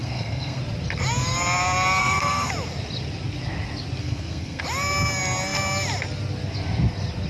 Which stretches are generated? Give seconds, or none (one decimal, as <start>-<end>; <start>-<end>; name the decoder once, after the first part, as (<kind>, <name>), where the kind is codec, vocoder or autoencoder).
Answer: 0.0-0.6 (codec, SNAC); 2.0-2.5; 4.0-4.6